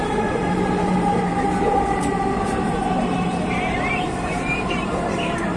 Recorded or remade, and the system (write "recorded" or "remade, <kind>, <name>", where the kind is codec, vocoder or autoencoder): remade, vocoder, BigVGAN v2